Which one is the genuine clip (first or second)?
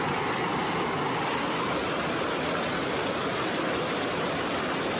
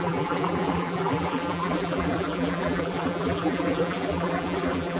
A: first